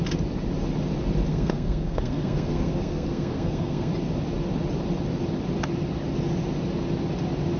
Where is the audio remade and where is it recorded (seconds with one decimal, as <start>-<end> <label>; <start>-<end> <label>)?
0.0-1.3 recorded; 1.3-3.9 remade; 3.9-7.6 recorded